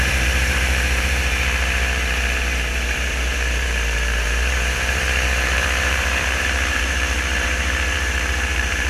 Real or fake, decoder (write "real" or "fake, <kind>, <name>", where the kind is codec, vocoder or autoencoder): fake, vocoder, BigVGAN v2